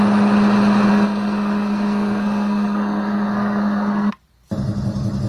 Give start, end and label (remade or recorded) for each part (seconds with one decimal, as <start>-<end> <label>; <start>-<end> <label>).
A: 0.0-0.9 recorded; 0.9-4.1 remade; 4.1-5.3 recorded